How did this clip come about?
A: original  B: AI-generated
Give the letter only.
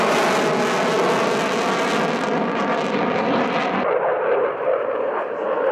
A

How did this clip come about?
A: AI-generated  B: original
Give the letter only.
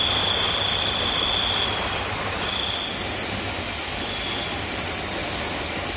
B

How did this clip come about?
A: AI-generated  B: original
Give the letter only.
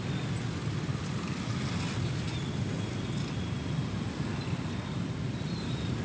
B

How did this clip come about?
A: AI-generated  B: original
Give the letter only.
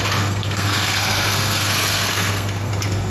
A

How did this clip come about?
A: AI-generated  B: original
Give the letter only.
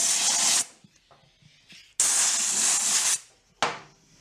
B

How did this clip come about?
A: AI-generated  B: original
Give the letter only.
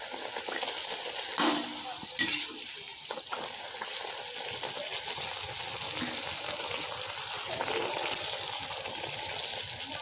B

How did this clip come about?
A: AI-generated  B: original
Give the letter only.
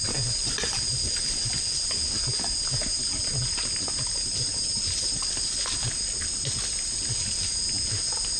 B